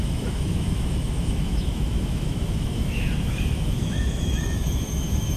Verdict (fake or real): fake